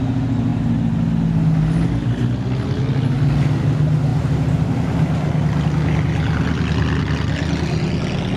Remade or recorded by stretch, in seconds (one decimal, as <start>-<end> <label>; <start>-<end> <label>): 0.0-8.4 recorded

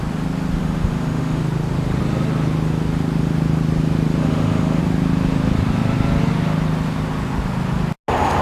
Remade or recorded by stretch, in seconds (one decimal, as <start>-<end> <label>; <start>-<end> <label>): 0.0-0.6 recorded; 0.6-1.4 remade; 1.4-4.2 recorded; 4.2-4.8 remade; 4.8-8.4 recorded